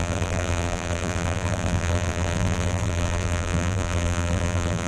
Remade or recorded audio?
remade